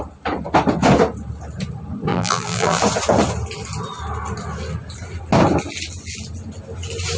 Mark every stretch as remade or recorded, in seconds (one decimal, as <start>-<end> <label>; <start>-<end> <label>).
0.0-2.1 recorded; 2.1-2.8 remade; 2.8-7.2 recorded